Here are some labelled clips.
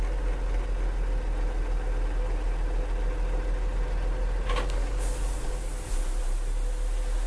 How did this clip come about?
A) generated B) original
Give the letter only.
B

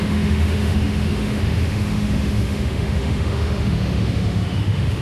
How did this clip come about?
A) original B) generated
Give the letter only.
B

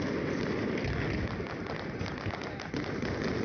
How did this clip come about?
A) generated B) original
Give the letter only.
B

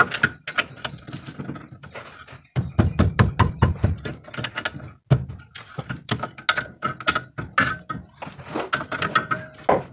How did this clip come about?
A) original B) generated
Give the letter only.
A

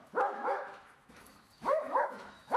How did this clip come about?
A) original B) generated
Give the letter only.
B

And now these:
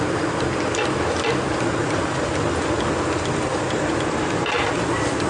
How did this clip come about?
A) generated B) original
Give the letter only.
B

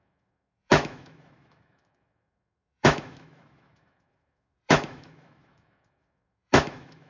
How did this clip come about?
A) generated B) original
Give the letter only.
A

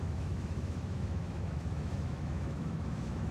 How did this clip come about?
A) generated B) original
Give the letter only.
A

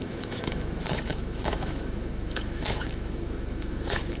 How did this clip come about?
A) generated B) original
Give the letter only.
A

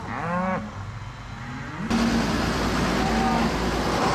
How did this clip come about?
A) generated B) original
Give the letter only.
B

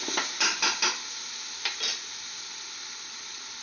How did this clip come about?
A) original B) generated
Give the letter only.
A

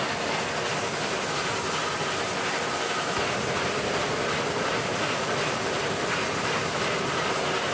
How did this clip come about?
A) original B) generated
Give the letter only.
A